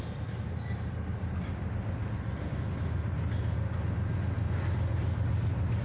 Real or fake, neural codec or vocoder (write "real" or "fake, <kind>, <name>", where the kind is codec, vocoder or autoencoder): real